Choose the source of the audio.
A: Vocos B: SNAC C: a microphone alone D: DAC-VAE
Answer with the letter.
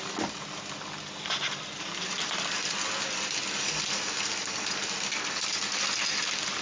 C